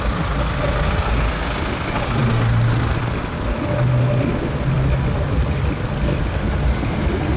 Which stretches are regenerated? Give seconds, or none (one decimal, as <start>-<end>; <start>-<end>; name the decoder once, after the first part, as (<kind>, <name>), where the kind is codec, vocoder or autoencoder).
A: none